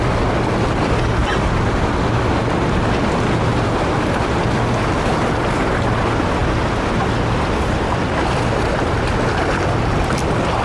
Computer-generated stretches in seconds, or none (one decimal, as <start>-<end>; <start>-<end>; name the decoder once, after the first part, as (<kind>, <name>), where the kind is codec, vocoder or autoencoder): none